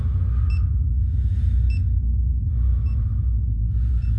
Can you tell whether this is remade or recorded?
recorded